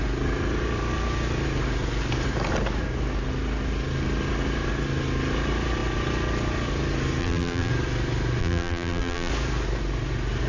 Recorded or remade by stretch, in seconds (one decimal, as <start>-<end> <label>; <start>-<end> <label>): 0.0-7.2 recorded; 7.2-7.7 remade; 7.7-8.4 recorded; 8.4-9.3 remade; 9.3-10.5 recorded